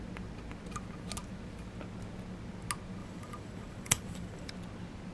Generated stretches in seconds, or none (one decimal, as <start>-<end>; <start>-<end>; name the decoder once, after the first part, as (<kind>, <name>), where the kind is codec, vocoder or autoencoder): 3.0-4.5 (vocoder, BigVGAN v2)